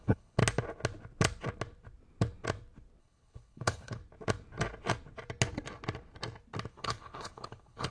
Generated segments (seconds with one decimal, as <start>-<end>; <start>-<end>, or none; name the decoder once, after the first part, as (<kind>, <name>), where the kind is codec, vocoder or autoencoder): 0.0-0.4 (codec, HILCodec); 3.0-4.0; 6.7-7.9